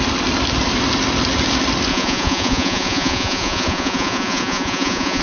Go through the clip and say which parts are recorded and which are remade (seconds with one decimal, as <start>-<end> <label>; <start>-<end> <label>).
0.0-1.9 recorded; 1.9-5.2 remade